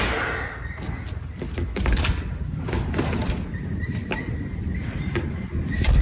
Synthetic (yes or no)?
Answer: no